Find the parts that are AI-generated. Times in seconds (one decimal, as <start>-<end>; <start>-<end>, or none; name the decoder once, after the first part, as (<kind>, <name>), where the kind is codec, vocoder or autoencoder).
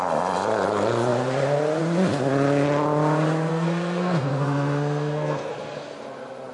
3.5-5.5 (codec, SNAC)